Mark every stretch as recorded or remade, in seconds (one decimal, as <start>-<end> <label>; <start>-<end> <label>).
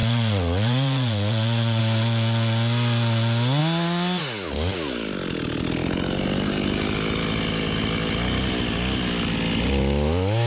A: 0.0-1.8 remade; 1.8-10.5 recorded